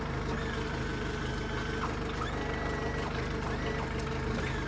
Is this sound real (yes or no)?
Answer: yes